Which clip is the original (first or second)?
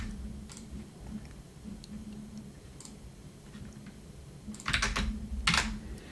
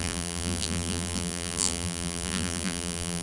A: first